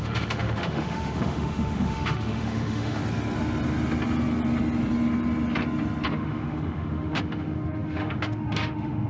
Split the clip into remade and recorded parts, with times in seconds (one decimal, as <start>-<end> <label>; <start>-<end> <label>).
0.0-3.0 remade; 3.0-6.1 recorded; 6.1-9.1 remade